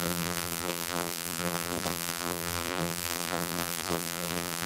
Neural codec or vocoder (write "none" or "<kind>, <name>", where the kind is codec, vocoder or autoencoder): vocoder, BigVGAN v2